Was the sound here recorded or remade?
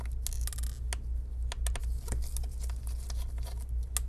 recorded